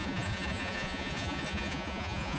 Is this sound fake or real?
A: fake